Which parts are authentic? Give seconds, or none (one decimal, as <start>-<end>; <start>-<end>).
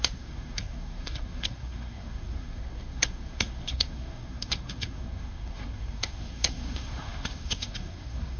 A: none